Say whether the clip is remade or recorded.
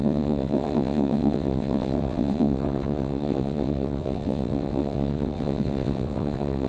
remade